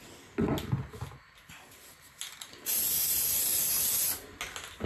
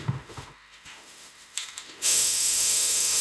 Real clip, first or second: first